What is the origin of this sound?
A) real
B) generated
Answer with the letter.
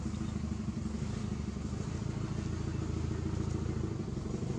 A